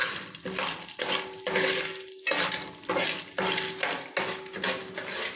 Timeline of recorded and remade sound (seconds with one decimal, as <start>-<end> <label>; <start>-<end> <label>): 0.0-5.4 recorded